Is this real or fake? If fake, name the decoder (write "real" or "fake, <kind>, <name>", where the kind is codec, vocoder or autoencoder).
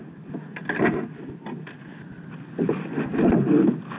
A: real